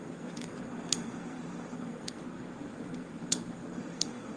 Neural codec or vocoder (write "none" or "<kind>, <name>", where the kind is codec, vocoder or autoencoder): codec, SNAC